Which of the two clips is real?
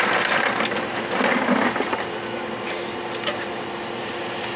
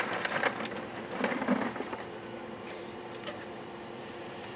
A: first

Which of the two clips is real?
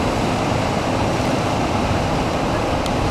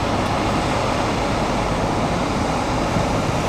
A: second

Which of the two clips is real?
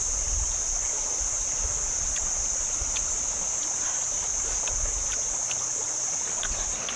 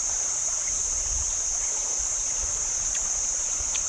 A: first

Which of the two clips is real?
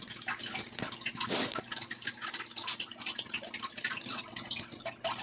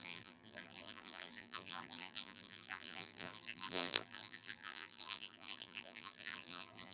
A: first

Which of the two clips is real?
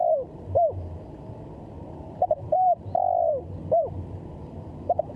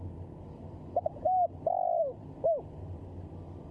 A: second